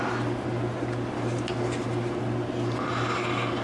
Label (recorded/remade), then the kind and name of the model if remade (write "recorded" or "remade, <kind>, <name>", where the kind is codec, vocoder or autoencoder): recorded